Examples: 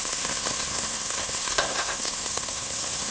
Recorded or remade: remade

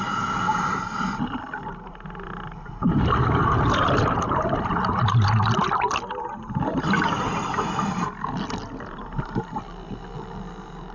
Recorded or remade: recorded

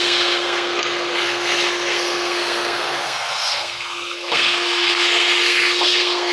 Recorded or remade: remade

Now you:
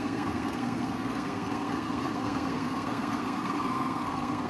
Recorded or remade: remade